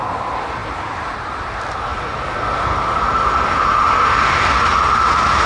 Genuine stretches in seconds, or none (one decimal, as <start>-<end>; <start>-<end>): 0.0-0.6; 1.5-5.5